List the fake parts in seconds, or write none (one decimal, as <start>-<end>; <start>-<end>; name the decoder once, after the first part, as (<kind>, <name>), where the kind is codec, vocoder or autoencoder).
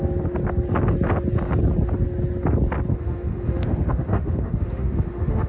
2.9-5.5 (autoencoder, DAC-VAE)